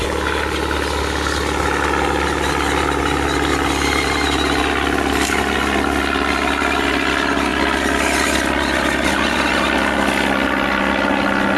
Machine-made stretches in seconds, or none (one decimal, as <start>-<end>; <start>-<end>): none